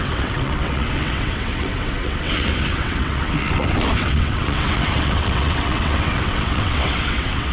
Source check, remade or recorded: remade